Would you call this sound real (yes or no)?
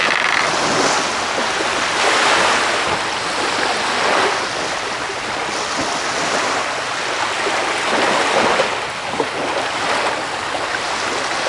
yes